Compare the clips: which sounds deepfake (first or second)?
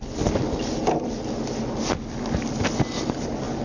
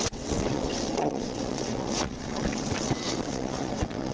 second